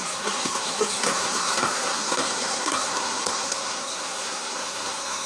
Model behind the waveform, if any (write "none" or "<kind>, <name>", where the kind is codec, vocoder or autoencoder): codec, SNAC